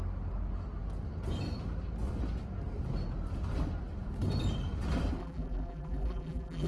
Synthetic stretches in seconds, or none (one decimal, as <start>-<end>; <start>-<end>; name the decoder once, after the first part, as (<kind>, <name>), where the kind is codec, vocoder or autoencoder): 5.2-6.7 (vocoder, BigVGAN v2)